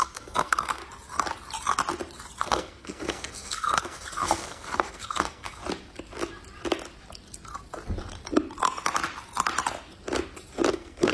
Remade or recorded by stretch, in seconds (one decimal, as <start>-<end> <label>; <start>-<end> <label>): 0.0-0.8 remade; 0.8-2.4 recorded; 2.4-5.6 remade; 5.6-10.7 recorded; 10.7-11.1 remade